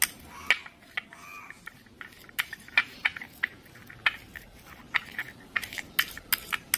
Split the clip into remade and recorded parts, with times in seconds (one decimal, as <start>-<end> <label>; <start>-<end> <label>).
0.0-6.8 recorded